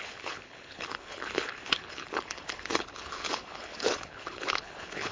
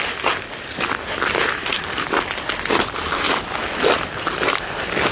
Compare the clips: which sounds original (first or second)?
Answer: second